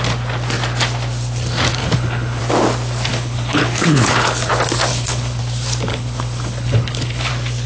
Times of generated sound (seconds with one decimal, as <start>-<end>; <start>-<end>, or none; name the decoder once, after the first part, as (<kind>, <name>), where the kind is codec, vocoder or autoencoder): 1.8-2.4 (codec, HILCodec); 3.1-4.5; 4.9-5.4; 5.9-7.3